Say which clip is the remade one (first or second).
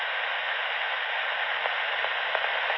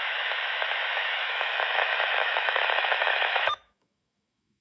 second